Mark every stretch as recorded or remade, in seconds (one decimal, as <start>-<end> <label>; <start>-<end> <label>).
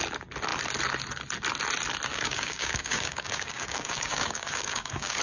0.0-2.1 recorded; 2.1-5.2 remade